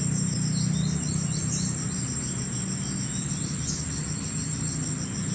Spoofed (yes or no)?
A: no